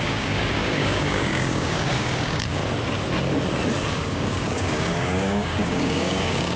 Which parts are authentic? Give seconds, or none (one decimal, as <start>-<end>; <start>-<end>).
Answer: 2.6-3.9

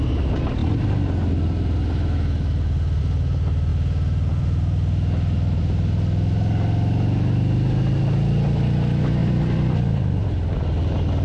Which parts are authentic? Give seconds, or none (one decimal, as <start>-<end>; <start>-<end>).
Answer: 0.0-9.2; 10.3-11.2

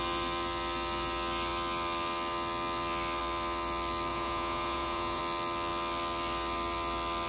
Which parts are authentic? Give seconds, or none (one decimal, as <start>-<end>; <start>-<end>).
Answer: 0.0-4.1; 5.2-7.3

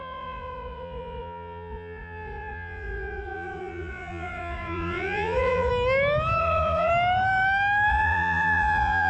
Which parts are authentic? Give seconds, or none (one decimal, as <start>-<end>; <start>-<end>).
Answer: 5.7-6.4; 6.9-7.9